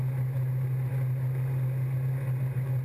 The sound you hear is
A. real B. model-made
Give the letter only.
A